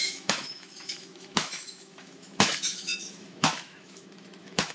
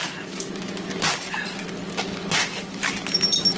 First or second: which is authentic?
second